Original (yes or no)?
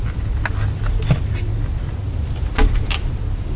yes